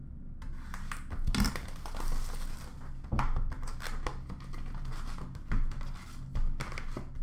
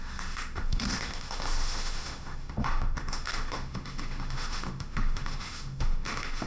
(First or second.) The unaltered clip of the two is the first